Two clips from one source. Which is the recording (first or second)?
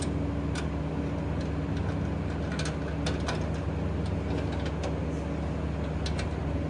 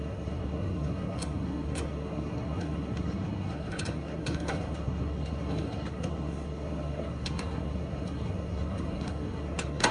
first